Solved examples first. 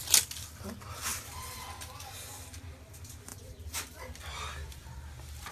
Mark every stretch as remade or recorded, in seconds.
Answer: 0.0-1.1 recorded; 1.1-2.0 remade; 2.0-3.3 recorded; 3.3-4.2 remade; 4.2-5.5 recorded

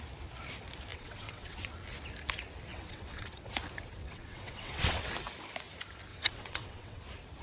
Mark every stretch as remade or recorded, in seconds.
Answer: 0.0-0.9 recorded; 0.9-1.7 remade; 1.7-2.7 recorded; 2.7-3.5 remade; 3.5-4.0 recorded; 4.0-5.0 remade; 5.0-6.1 recorded; 6.1-7.0 remade; 7.0-7.4 recorded

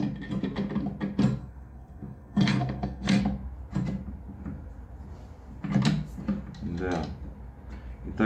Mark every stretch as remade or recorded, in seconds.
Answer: 0.0-1.4 recorded; 1.4-3.2 remade; 3.2-8.3 recorded

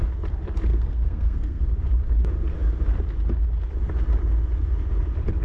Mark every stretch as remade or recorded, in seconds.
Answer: 0.0-0.7 recorded; 0.7-1.6 remade; 1.6-5.4 recorded

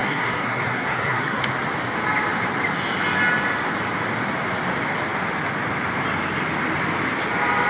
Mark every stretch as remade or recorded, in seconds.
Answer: 0.0-1.4 remade; 1.4-7.7 recorded

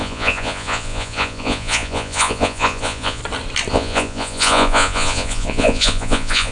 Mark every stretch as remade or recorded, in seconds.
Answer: 0.0-3.2 remade; 3.2-3.7 recorded; 3.7-6.5 remade